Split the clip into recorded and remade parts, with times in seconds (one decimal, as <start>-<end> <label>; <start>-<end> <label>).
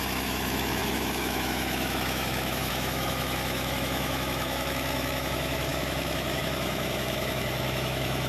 0.0-8.3 remade